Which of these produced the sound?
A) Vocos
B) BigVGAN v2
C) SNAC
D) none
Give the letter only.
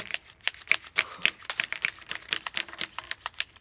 D